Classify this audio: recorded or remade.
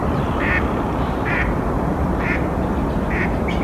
recorded